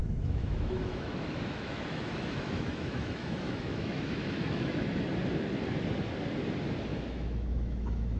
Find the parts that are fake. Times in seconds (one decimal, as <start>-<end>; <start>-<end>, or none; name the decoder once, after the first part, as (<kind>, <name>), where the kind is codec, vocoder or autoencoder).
0.0-4.9 (autoencoder, DAC-VAE); 6.9-8.2